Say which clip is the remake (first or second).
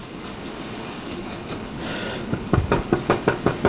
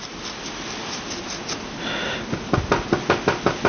first